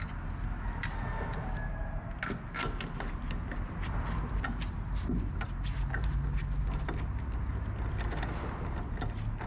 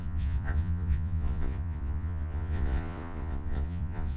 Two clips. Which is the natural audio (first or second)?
first